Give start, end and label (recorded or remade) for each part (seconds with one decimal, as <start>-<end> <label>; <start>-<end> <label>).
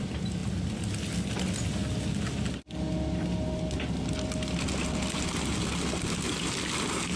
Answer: 0.0-7.2 recorded